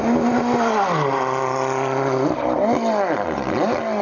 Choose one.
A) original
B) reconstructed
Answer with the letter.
A